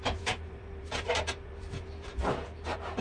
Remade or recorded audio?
remade